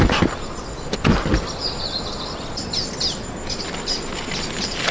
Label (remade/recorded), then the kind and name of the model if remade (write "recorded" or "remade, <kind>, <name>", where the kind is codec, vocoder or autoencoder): recorded